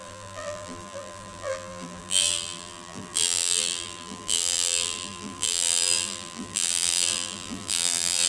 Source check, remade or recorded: remade